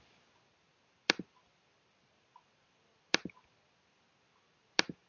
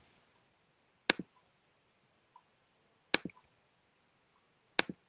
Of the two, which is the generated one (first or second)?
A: first